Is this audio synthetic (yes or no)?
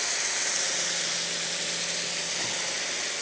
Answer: no